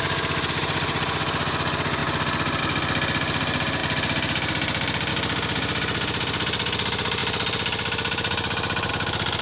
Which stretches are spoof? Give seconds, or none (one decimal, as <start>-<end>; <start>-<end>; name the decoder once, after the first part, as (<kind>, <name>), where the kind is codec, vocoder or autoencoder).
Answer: none